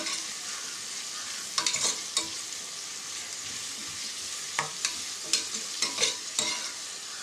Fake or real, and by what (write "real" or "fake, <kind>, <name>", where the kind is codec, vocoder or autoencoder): real